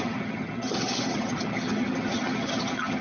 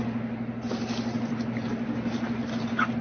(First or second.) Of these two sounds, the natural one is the second